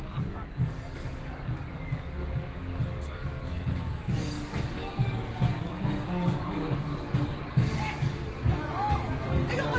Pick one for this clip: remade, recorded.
remade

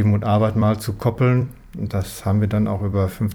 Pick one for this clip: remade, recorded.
remade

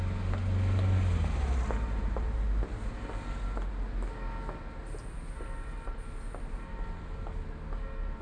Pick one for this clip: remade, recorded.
recorded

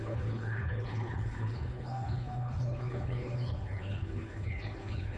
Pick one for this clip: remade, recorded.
remade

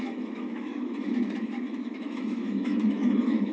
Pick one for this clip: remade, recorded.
remade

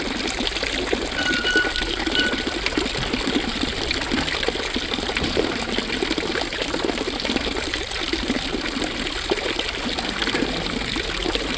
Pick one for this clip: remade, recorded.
recorded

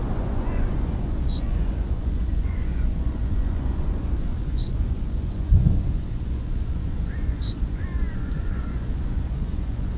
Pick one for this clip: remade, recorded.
remade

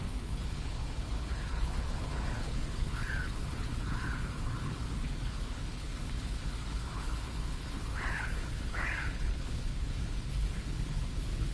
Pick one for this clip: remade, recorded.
remade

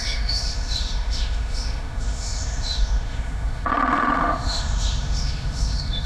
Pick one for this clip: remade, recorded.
remade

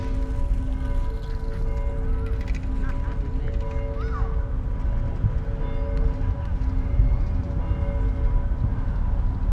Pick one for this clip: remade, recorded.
recorded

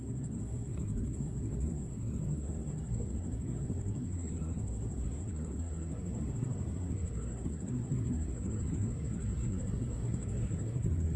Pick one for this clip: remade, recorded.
remade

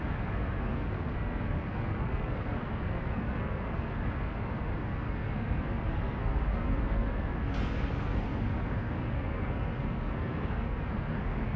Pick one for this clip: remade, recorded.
remade